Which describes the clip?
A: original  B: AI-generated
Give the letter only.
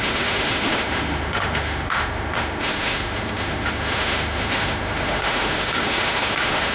B